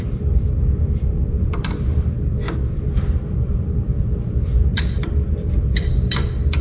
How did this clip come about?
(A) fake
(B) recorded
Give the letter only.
A